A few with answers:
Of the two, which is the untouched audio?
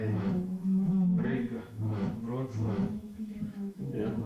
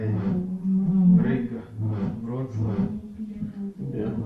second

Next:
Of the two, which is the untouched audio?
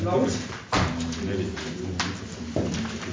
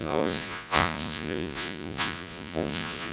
first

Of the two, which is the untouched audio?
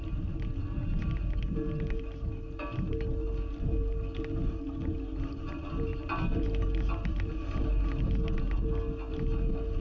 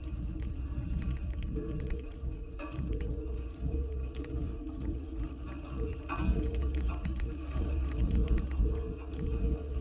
first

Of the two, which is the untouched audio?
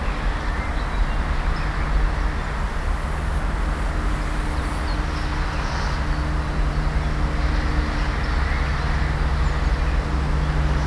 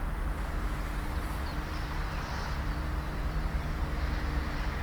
first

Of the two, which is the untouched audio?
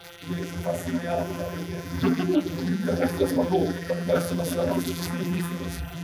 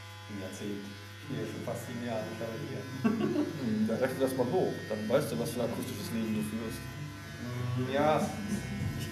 second